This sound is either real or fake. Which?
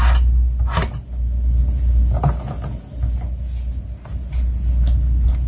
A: real